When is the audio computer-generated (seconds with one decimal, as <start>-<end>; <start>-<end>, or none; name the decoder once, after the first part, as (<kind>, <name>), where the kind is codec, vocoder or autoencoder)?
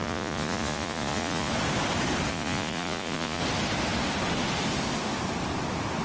0.0-1.5 (vocoder, Vocos); 2.3-3.4